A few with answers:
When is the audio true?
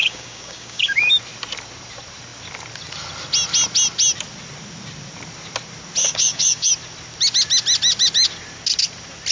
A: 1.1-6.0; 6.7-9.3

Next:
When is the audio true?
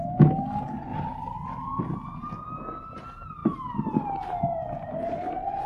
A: 0.0-5.7